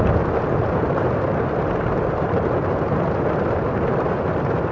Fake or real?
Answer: real